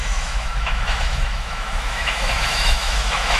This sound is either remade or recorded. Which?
remade